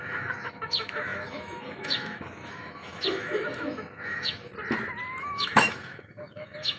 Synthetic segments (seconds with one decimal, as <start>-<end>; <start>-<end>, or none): 0.0-4.5; 5.2-6.8